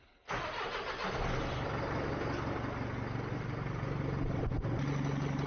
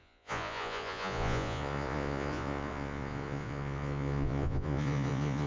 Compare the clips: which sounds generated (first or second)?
second